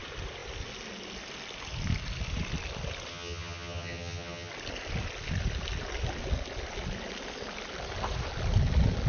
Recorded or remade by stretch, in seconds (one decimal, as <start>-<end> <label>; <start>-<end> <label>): 0.0-3.1 recorded; 3.1-4.5 remade; 4.5-9.1 recorded

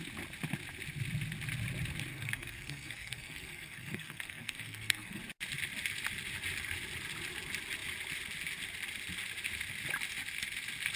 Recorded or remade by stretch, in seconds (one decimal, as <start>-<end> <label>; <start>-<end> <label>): 0.0-2.1 recorded; 2.1-5.2 remade; 5.2-11.0 recorded

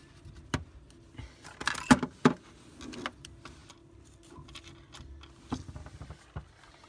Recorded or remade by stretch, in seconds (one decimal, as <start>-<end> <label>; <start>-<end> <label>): 0.0-6.9 recorded